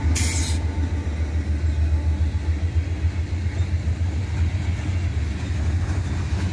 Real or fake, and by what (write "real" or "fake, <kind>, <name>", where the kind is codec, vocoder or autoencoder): real